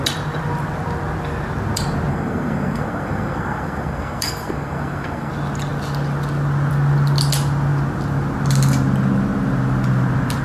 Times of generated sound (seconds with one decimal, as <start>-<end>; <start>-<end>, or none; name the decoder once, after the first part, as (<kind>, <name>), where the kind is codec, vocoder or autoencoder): 2.1-5.3 (codec, SNAC)